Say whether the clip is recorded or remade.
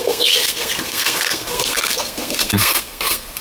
remade